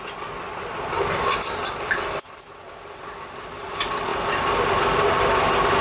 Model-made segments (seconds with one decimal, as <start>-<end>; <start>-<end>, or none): none